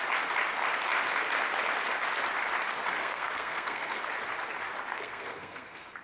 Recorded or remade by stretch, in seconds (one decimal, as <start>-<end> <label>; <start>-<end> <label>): 0.0-3.0 recorded; 3.0-4.0 remade; 4.0-4.9 recorded; 4.9-6.0 remade